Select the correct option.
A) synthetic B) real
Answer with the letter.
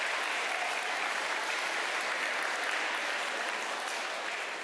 A